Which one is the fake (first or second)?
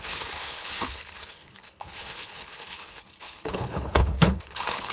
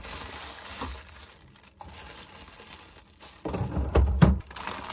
first